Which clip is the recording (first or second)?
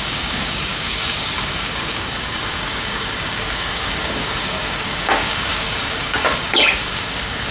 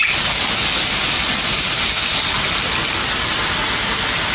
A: second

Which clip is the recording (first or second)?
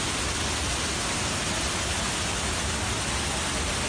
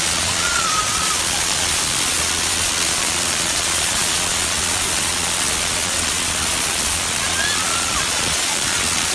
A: first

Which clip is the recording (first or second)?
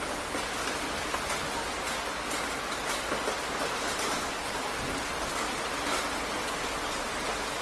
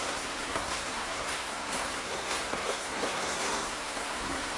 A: first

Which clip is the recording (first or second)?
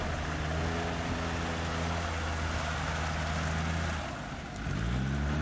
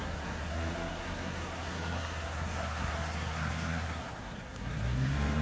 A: first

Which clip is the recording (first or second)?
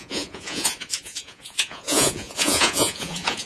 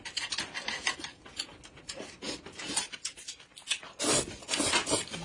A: second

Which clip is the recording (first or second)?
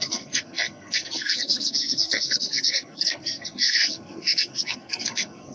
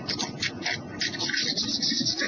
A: second